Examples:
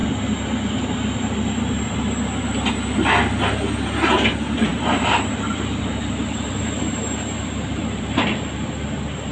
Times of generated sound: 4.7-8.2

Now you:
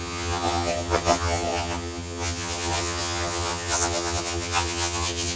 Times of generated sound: 0.0-5.4

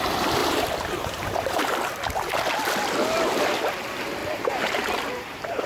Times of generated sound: 0.4-1.6; 4.2-5.7

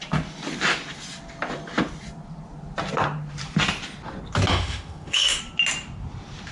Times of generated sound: 4.5-5.4

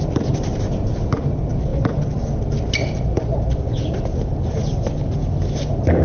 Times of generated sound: none

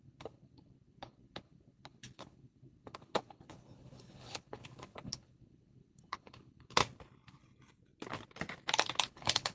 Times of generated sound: 0.0-6.8; 9.1-9.5